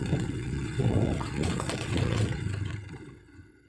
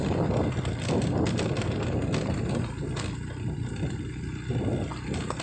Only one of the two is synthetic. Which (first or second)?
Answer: first